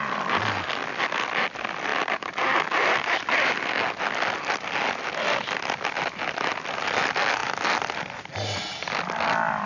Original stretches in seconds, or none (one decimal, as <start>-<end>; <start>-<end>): 0.0-9.7